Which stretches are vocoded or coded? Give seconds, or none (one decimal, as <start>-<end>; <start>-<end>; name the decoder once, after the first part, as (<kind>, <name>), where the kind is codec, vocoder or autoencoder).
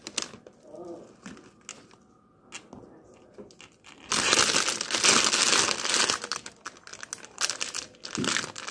none